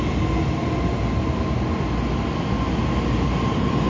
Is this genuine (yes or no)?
yes